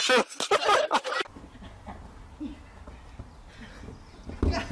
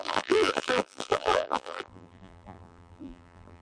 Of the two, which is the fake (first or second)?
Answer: second